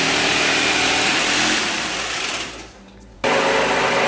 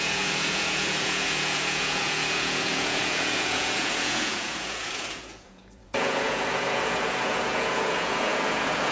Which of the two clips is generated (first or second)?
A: second